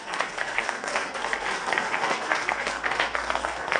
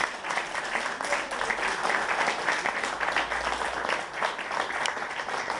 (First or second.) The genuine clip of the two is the second